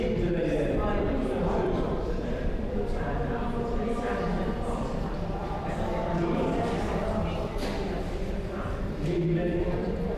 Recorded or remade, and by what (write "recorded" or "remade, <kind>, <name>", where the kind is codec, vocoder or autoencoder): remade, vocoder, BigVGAN v2